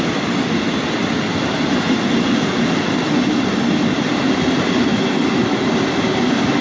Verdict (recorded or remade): recorded